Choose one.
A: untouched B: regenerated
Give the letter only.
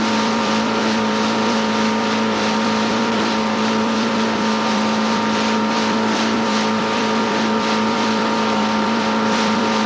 B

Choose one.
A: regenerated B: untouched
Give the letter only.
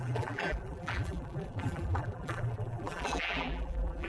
A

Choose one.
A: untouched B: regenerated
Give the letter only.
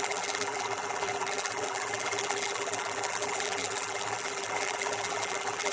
B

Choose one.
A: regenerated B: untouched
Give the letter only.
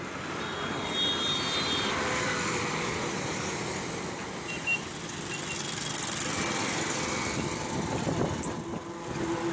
B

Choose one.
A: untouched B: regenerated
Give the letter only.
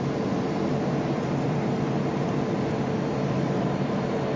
B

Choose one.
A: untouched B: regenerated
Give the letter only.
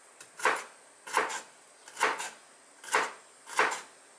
A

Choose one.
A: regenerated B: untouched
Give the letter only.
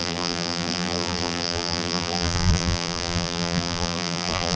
A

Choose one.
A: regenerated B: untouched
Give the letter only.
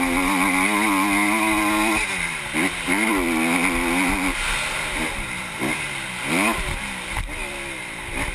B